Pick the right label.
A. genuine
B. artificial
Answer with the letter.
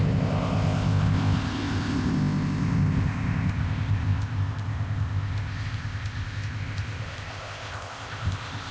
B